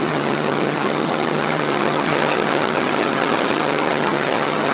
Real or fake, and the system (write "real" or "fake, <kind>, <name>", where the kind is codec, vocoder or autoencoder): fake, vocoder, HiFi-GAN